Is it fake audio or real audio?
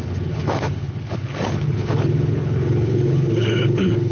fake